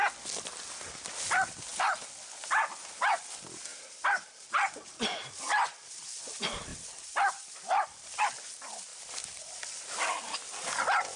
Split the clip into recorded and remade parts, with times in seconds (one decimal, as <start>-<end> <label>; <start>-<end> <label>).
0.0-1.7 recorded; 1.7-2.3 remade; 2.3-3.7 recorded; 3.7-6.0 remade; 6.0-6.7 recorded; 6.7-8.2 remade; 8.2-8.9 recorded; 8.9-9.7 remade; 9.7-11.2 recorded